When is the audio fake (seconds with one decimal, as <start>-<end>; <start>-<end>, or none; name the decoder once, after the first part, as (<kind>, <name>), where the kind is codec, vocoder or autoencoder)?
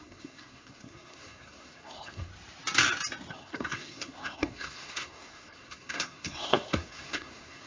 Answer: 0.0-2.3 (codec, SNAC); 3.3-7.7